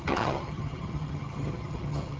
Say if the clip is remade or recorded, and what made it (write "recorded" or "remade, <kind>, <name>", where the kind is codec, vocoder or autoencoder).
remade, vocoder, HiFi-GAN